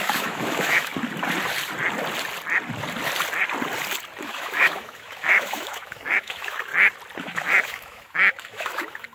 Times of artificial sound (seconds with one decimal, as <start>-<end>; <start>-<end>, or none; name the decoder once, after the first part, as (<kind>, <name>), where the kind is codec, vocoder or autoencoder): 0.0-0.9 (autoencoder, DAC-VAE); 4.2-6.7; 7.2-9.1